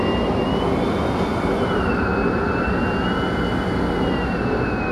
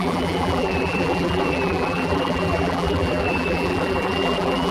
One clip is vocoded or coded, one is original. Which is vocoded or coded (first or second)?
second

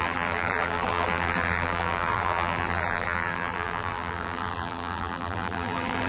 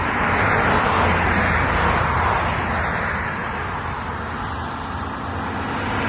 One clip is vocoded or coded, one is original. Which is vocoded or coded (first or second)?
first